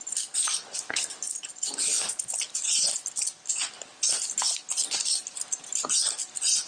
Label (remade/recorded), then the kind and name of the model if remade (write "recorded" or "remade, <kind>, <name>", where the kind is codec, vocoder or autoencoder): recorded